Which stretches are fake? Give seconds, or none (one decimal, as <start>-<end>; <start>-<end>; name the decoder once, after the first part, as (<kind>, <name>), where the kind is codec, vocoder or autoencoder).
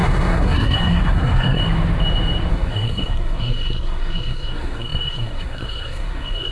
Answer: 0.0-1.6 (codec, SNAC); 2.5-6.5